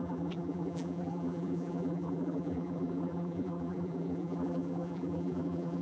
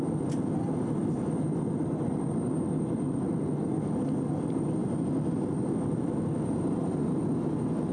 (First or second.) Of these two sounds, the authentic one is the second